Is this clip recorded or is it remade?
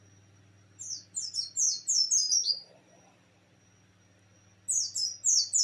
recorded